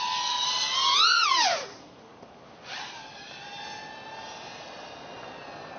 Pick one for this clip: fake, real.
real